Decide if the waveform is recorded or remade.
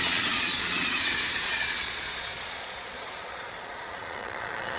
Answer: remade